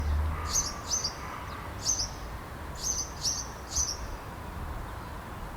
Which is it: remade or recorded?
recorded